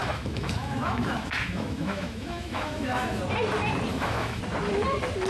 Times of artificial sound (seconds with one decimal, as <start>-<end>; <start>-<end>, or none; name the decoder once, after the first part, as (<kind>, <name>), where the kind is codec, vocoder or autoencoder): 0.0-3.2 (autoencoder, DAC-VAE); 3.9-4.4